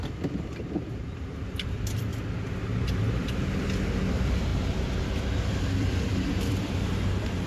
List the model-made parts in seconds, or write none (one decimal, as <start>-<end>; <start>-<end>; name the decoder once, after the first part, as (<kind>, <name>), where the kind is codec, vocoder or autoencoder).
0.0-2.1 (vocoder, BigVGAN v2); 4.1-4.5; 5.6-7.5